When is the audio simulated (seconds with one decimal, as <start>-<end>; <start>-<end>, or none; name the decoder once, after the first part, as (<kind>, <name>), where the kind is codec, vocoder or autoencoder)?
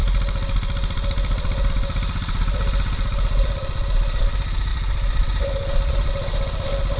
4.7-6.1 (vocoder, BigVGAN v2)